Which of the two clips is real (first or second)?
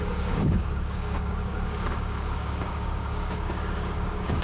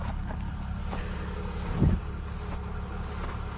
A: second